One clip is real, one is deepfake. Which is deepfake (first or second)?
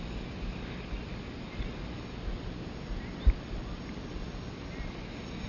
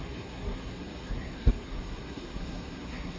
second